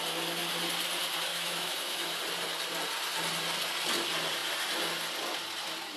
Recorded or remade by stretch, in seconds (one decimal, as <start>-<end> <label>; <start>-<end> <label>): 0.0-1.3 recorded; 1.3-2.2 remade; 2.2-6.0 recorded